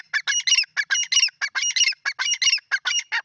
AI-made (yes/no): no